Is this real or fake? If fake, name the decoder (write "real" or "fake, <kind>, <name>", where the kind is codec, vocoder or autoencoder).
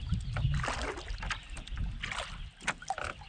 real